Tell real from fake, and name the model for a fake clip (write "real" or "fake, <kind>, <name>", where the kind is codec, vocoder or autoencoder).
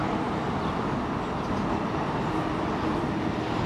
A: real